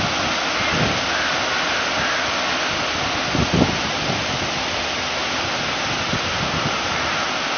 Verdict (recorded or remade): recorded